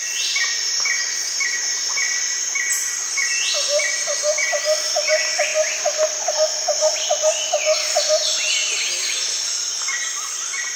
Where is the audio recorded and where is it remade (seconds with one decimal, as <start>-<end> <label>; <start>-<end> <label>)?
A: 0.0-10.8 recorded